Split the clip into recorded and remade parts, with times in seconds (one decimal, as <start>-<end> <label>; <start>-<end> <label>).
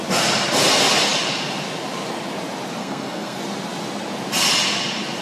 0.0-2.8 recorded; 2.8-3.4 remade; 3.4-5.2 recorded